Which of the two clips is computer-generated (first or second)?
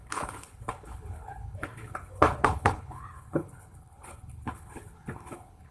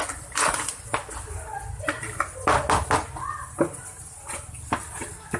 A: first